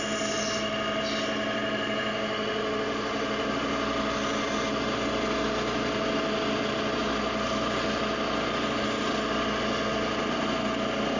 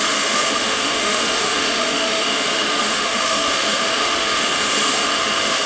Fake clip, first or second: second